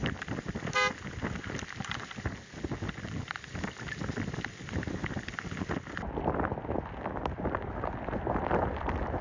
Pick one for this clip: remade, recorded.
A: recorded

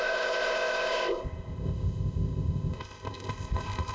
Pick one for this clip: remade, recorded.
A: remade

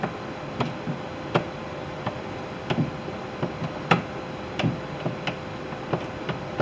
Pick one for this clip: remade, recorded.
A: recorded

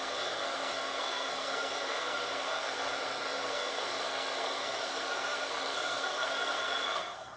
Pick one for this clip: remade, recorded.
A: remade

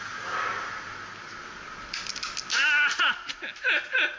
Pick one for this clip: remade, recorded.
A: recorded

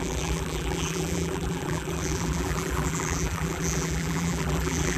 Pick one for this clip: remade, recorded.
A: remade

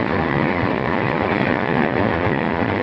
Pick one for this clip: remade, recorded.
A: remade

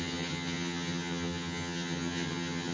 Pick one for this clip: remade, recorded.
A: remade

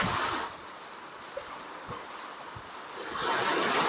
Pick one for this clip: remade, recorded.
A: recorded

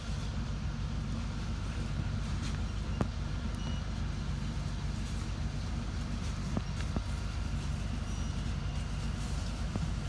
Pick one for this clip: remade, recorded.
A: recorded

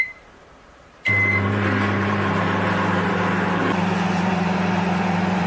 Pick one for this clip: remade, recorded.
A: remade